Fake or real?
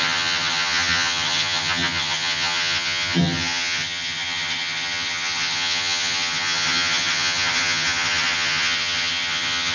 fake